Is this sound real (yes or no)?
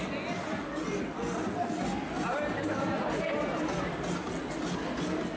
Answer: yes